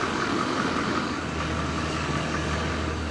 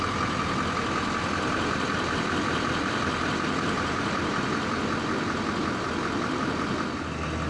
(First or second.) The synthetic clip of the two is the first